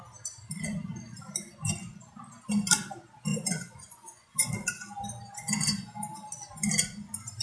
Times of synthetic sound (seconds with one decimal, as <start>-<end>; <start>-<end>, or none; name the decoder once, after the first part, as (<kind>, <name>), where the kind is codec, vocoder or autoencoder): 3.3-4.5 (vocoder, Vocos)